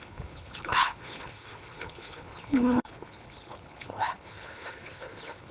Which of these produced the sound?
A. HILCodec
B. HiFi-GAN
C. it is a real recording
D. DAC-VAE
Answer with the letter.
A